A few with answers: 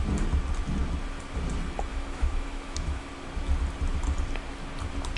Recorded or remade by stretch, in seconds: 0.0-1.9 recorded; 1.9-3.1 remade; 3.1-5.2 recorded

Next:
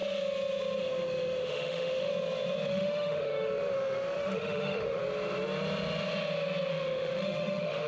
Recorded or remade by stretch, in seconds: 0.0-0.8 recorded; 0.8-2.1 remade; 2.1-2.7 recorded; 2.7-5.0 remade; 5.0-6.7 recorded; 6.7-7.9 remade

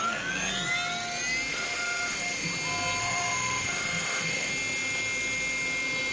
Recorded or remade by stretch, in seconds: 0.0-1.5 recorded; 1.5-2.5 remade; 2.5-3.0 recorded; 3.0-4.5 remade; 4.5-6.1 recorded

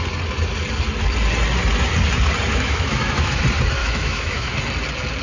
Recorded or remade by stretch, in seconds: 0.0-2.5 recorded; 2.5-3.4 remade; 3.4-3.8 recorded; 3.8-4.6 remade; 4.6-5.2 recorded

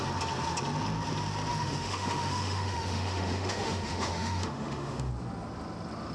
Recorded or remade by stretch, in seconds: 0.0-1.5 recorded; 1.5-5.1 remade; 5.1-6.1 recorded